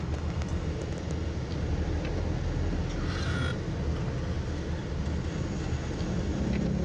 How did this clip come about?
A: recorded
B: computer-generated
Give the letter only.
A